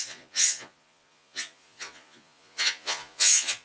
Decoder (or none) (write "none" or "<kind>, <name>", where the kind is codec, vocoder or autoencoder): vocoder, Vocos